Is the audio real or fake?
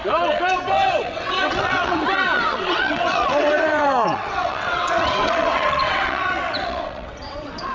fake